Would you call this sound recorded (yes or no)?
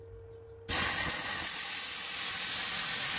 yes